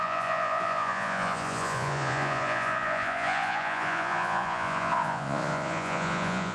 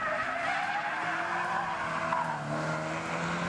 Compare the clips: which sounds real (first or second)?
second